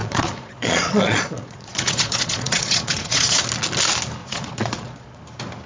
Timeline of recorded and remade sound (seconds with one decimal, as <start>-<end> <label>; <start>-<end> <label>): 0.0-3.4 remade; 3.4-4.2 recorded; 4.2-5.2 remade; 5.2-5.7 recorded